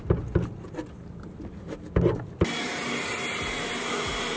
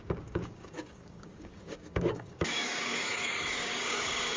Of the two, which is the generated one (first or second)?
second